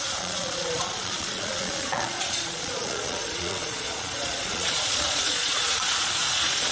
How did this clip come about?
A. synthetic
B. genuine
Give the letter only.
A